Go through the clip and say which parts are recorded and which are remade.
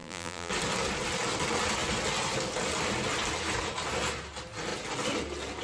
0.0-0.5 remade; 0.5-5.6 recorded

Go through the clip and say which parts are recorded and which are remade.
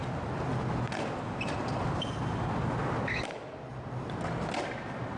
0.0-3.7 recorded; 3.7-4.4 remade; 4.4-5.2 recorded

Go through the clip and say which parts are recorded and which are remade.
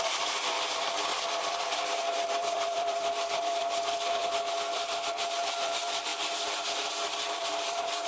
0.0-6.1 remade; 6.1-7.2 recorded; 7.2-8.1 remade